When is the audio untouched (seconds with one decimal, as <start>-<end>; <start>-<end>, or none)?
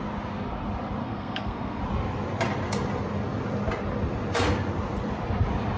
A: 0.0-1.0; 1.8-5.8